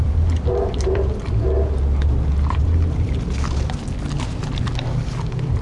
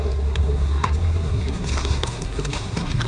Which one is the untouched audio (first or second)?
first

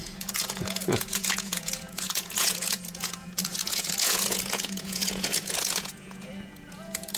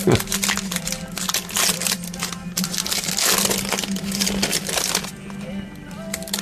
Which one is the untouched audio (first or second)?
second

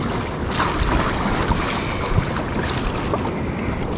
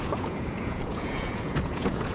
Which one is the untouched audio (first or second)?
first